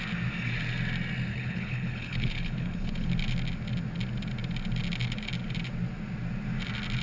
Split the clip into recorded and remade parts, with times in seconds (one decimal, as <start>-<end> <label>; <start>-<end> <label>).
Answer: 0.0-1.3 recorded; 1.3-3.1 remade; 3.1-7.0 recorded